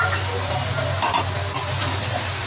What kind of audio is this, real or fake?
real